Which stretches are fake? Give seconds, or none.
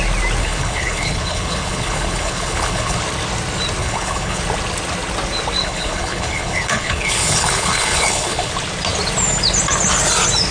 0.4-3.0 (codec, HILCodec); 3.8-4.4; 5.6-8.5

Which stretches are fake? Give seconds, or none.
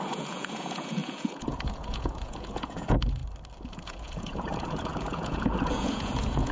0.0-3.2 (vocoder, Vocos); 3.7-6.5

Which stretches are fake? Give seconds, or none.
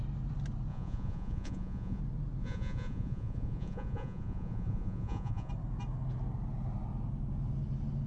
0.7-2.0 (vocoder, Vocos); 2.4-5.5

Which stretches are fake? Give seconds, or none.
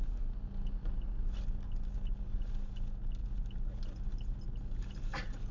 none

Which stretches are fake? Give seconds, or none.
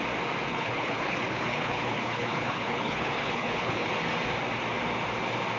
0.5-3.9 (codec, HILCodec)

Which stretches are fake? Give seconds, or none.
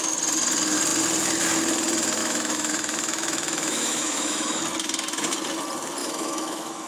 2.2-4.6 (autoencoder, DAC-VAE); 6.0-6.9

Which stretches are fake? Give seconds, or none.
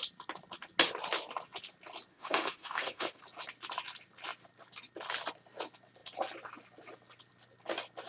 2.1-3.2 (autoencoder, DAC-VAE)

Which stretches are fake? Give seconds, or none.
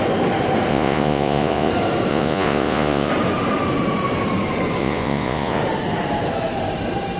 0.7-1.7 (vocoder, Vocos); 2.1-3.1; 4.8-5.6